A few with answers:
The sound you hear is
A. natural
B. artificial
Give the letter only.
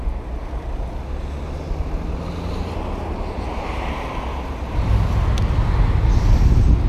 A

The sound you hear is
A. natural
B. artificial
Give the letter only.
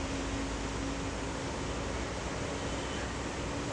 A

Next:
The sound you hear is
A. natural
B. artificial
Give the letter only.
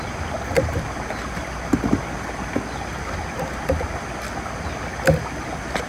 A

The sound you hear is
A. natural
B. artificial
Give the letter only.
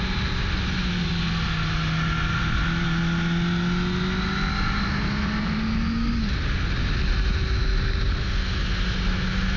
A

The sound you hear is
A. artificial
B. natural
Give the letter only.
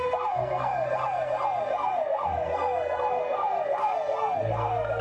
A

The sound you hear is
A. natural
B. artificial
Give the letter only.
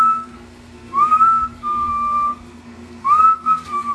B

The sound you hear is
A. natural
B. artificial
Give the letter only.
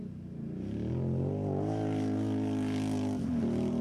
A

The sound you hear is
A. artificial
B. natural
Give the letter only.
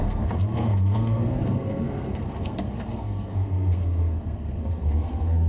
A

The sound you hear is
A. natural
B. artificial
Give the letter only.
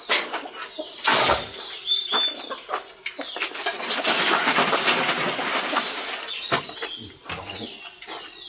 A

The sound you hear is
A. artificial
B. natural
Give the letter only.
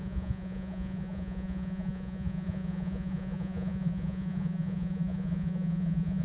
A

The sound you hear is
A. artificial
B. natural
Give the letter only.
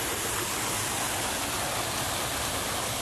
B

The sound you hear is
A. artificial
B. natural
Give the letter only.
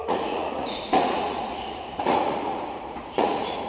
A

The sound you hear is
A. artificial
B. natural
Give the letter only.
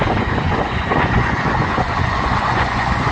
A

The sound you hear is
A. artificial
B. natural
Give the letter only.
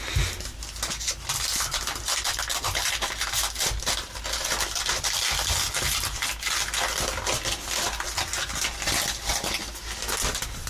B